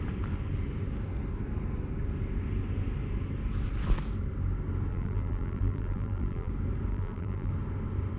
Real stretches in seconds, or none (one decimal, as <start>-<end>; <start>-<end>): 0.0-4.9; 6.5-6.9; 7.5-8.2